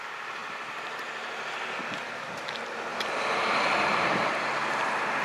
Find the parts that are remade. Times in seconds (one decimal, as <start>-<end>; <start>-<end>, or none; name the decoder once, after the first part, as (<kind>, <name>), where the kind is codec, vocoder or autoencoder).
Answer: 2.9-4.3 (vocoder, BigVGAN v2)